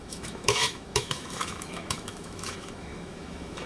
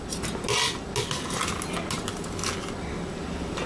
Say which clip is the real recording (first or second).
second